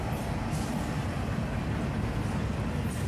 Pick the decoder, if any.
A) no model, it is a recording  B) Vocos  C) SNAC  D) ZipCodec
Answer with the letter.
A